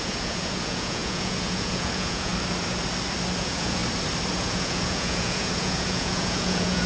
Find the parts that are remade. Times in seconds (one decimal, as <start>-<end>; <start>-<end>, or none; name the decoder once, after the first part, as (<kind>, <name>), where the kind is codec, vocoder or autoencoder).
0.0-2.3 (vocoder, Vocos); 3.4-3.8; 4.4-6.9